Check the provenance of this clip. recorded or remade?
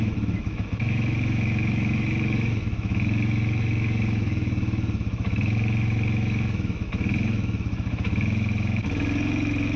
remade